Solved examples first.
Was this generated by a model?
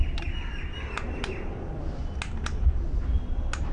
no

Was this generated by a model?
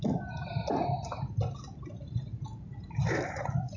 no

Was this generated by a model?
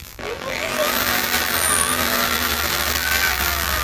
yes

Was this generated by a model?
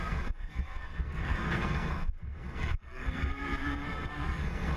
yes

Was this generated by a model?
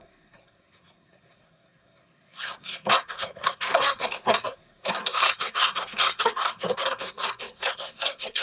yes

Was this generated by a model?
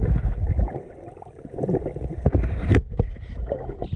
no